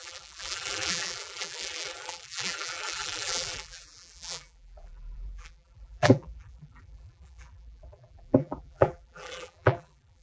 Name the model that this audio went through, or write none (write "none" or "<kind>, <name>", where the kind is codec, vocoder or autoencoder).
vocoder, BigVGAN v2